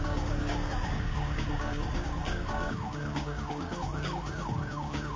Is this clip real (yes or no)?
no